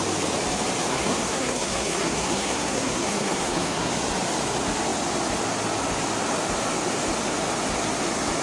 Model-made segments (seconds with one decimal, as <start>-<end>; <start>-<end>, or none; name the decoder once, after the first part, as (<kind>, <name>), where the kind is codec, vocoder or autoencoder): 0.9-3.9 (codec, SNAC)